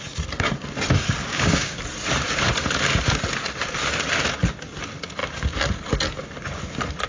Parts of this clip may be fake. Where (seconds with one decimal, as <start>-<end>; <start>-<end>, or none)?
1.2-1.8